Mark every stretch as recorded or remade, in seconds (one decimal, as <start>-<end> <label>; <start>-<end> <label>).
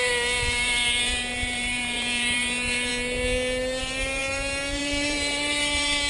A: 0.0-2.9 remade; 2.9-3.8 recorded; 3.8-6.1 remade